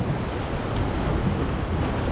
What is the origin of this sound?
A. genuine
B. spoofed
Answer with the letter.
A